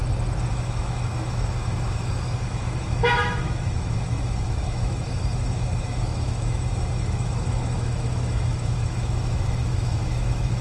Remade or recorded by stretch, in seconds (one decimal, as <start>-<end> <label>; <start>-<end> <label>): 0.0-0.5 recorded; 0.5-10.6 remade